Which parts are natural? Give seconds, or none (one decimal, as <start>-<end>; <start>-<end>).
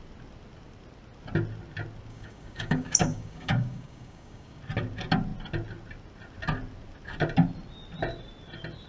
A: 0.0-2.1; 4.6-8.9